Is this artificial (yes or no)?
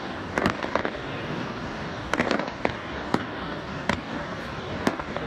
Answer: yes